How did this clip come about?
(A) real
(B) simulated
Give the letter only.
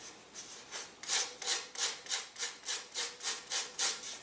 A